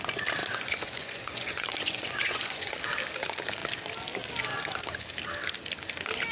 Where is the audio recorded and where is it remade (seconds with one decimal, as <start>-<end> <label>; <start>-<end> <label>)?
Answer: 0.0-0.4 recorded; 0.4-2.7 remade; 2.7-6.3 recorded